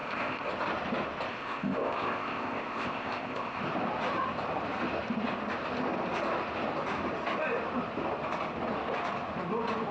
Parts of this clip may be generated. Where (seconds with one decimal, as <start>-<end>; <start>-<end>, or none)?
0.0-0.5; 1.3-3.6